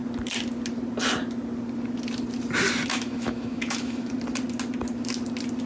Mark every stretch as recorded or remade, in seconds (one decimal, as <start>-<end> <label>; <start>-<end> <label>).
0.0-2.9 recorded; 2.9-4.1 remade; 4.1-5.7 recorded

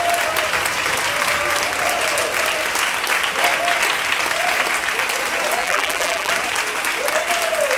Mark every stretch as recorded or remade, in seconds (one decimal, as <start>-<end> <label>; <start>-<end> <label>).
0.0-5.6 recorded; 5.6-6.3 remade; 6.3-7.8 recorded

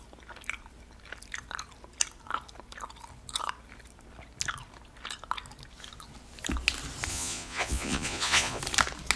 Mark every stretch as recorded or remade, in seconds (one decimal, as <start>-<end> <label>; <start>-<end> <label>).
0.0-7.1 recorded; 7.1-8.6 remade; 8.6-9.2 recorded